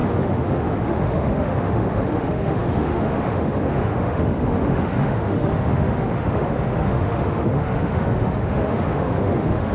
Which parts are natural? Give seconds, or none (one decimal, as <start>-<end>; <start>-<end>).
none